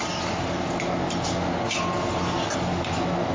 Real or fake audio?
real